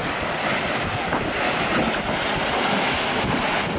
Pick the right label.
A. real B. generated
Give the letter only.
A